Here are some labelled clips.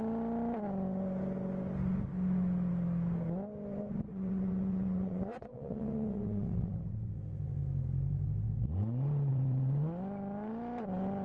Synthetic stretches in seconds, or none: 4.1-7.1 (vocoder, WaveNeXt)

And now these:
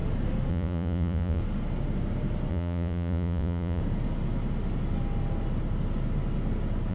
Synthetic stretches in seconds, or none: 0.5-1.4 (vocoder, Vocos); 2.5-3.8